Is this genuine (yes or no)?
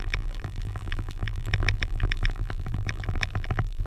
no